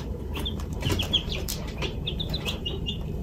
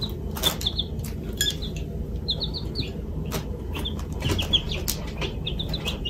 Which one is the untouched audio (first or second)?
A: second